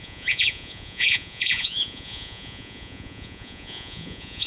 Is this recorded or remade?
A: remade